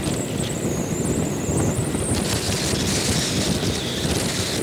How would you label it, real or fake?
real